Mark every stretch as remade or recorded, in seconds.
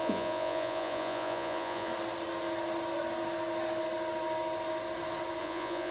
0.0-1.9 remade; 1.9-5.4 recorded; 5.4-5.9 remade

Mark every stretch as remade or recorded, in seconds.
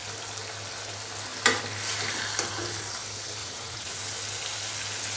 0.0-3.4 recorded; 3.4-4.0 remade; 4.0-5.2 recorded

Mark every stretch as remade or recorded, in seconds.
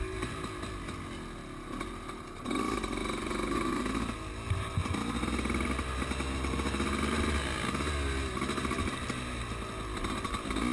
0.0-3.0 recorded; 3.0-3.8 remade; 3.8-10.7 recorded